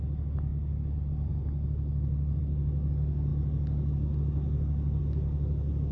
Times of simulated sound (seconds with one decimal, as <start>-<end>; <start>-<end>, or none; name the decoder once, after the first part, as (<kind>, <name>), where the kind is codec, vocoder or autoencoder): none